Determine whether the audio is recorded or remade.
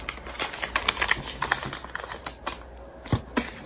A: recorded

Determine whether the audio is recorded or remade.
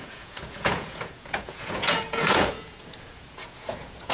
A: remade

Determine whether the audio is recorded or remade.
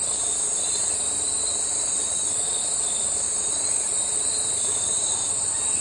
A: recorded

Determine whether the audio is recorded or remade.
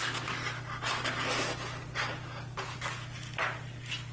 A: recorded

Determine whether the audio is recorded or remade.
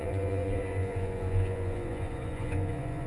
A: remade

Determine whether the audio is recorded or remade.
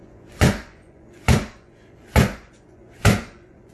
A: remade